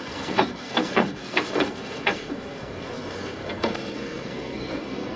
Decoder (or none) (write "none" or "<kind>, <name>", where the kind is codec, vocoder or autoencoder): codec, SNAC